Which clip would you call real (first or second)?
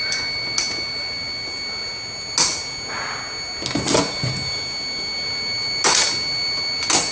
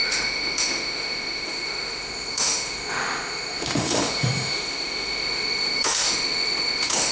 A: first